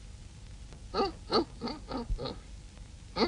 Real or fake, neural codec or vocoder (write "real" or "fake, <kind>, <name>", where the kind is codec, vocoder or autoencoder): real